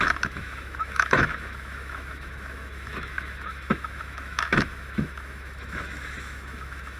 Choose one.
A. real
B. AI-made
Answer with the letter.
B